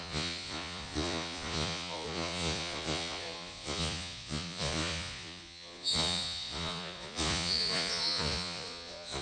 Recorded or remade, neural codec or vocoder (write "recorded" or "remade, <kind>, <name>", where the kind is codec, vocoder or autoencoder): remade, vocoder, Vocos